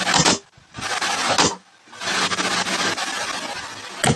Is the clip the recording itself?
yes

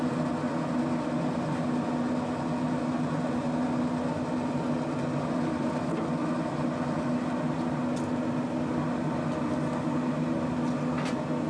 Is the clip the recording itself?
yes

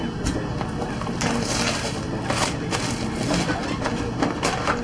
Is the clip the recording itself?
yes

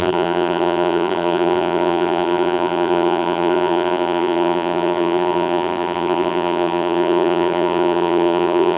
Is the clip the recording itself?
no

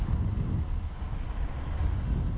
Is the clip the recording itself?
yes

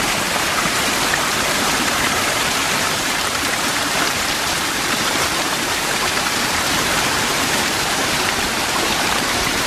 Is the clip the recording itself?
no